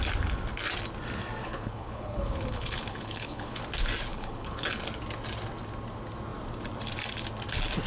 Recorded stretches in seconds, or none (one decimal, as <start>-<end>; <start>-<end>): 0.0-1.4; 3.6-4.1; 4.8-7.9